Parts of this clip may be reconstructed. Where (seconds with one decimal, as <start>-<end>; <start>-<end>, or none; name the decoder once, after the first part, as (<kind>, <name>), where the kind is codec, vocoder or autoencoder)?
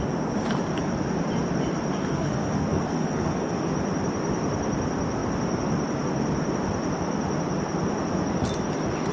2.0-3.7 (codec, SNAC)